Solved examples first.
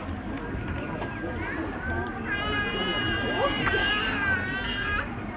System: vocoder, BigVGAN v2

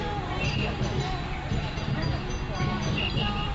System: vocoder, BigVGAN v2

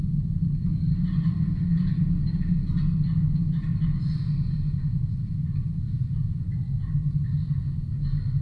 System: none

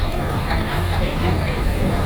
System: codec, DAC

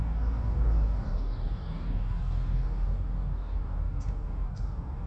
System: codec, DAC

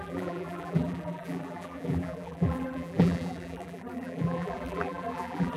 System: vocoder, BigVGAN v2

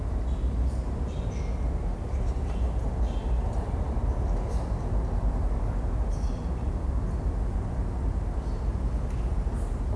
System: none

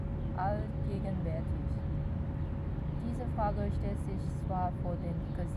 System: none